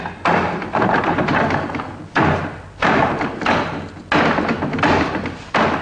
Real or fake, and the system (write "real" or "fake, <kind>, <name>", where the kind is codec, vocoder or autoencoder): real